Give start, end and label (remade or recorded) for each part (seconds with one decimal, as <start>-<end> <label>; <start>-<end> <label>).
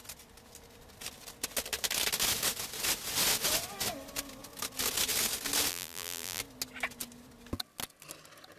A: 0.0-5.7 recorded; 5.7-6.4 remade; 6.4-8.6 recorded